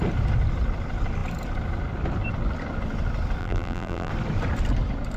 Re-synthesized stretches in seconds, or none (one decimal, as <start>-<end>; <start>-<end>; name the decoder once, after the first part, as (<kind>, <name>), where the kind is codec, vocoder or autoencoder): 3.4-4.1 (vocoder, BigVGAN v2)